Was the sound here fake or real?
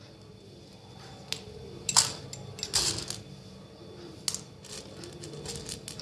real